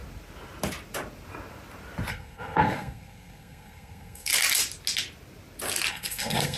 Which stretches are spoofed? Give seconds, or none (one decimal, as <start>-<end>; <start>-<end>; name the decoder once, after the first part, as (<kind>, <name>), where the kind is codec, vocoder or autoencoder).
2.1-4.3 (codec, SNAC); 5.9-6.6